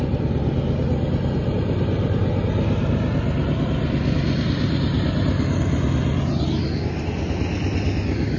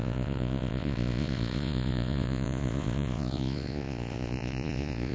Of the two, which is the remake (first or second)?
second